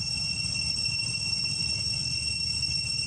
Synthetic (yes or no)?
no